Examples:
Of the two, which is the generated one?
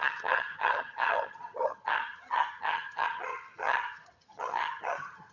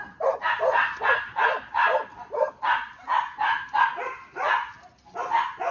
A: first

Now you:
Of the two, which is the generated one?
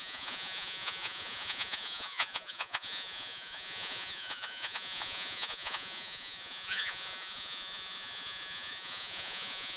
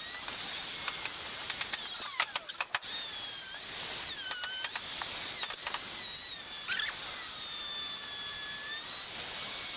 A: first